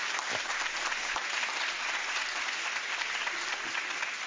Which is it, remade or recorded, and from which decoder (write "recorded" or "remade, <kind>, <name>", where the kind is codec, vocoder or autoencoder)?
recorded